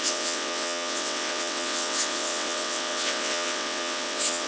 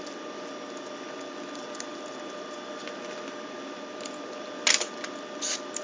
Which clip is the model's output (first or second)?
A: first